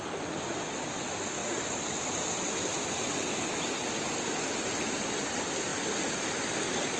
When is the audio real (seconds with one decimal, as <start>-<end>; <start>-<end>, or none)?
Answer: 0.0-7.0